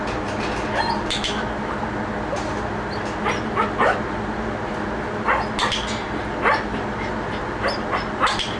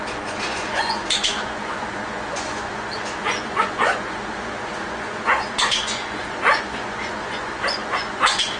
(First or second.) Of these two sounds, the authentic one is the first